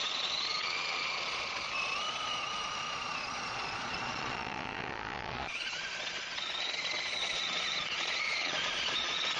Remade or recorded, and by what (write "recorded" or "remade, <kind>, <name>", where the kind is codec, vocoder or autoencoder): remade, vocoder, Vocos